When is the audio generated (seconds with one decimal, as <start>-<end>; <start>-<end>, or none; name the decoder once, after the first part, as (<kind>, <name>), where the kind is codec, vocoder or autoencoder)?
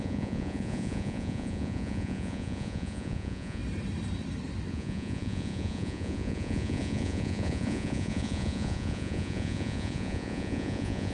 0.0-3.6 (vocoder, Vocos); 4.7-11.1